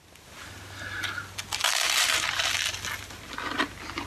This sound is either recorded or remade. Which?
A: recorded